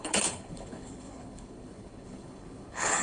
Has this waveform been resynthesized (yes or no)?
yes